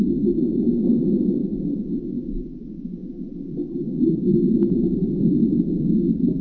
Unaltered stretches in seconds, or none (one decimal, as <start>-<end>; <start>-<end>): 0.0-6.4